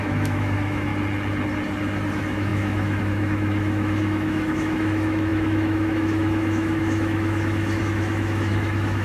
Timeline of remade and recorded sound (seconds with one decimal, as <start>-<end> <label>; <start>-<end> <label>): 0.0-0.9 remade; 0.9-2.1 recorded; 2.1-9.0 remade